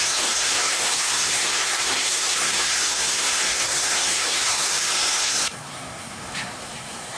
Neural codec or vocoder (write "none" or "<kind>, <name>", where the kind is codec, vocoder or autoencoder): codec, SNAC